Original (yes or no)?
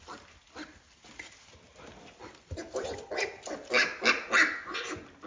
yes